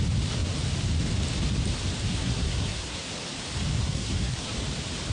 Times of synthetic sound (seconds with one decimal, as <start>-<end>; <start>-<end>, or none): 2.1-3.1; 3.7-4.5

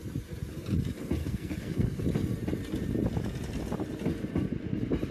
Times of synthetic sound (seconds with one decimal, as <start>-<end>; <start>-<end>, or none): 1.2-2.0

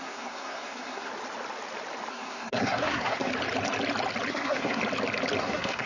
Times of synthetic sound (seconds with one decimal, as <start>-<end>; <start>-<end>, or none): 0.0-1.1; 2.1-3.3; 4.3-4.8; 5.4-5.9

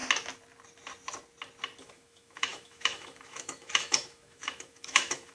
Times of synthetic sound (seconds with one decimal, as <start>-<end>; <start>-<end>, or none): 1.8-5.3

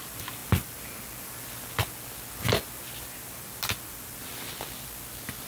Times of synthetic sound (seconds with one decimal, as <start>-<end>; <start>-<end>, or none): none

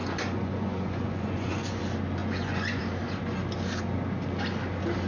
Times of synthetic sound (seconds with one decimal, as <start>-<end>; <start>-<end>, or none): 0.0-1.8; 2.2-2.8